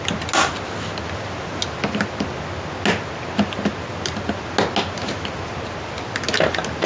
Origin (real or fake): real